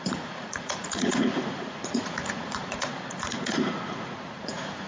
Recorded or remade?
remade